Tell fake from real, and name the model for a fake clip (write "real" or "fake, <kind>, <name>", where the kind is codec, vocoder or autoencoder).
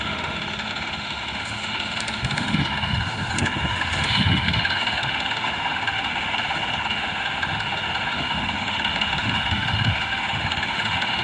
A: fake, autoencoder, DAC-VAE